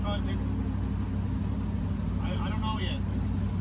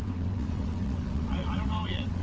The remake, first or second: second